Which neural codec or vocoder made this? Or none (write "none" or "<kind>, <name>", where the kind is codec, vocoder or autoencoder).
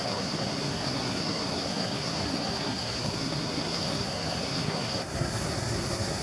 codec, SNAC